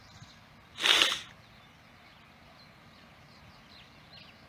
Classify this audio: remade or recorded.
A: recorded